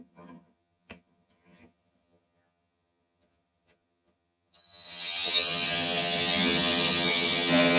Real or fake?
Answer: fake